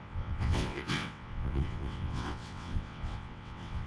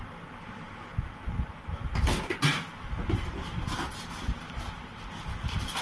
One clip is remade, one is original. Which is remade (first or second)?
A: first